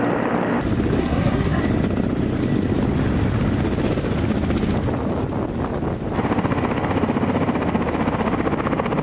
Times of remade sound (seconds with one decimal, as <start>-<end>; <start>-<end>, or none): 1.0-1.6